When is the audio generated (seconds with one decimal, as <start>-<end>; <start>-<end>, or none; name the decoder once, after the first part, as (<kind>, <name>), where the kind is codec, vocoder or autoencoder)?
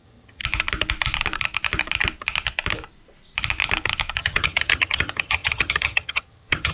0.0-0.4 (vocoder, HiFi-GAN); 4.2-6.7